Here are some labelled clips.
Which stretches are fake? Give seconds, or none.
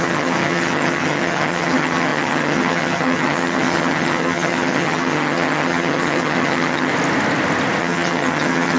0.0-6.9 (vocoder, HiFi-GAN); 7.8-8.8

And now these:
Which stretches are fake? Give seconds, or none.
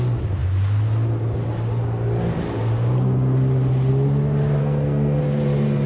4.6-5.2 (codec, SNAC)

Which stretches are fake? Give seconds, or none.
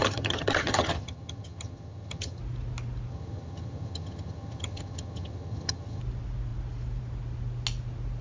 0.0-2.4 (vocoder, HiFi-GAN); 3.1-6.0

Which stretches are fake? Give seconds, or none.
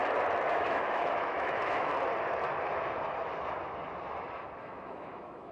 0.5-1.9 (autoencoder, DAC-VAE); 4.6-5.5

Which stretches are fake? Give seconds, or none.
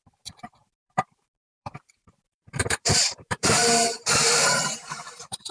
0.0-5.5 (vocoder, BigVGAN v2)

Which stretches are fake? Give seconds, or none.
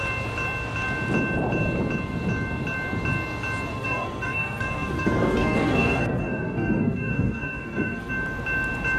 3.7-8.1 (codec, SNAC)